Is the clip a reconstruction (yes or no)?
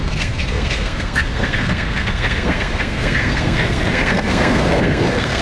yes